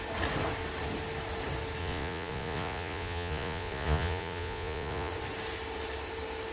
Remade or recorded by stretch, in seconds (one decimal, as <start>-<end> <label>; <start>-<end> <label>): 0.0-1.8 recorded; 1.8-5.1 remade; 5.1-6.5 recorded